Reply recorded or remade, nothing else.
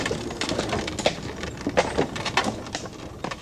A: recorded